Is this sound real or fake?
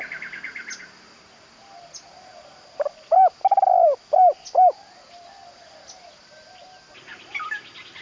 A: real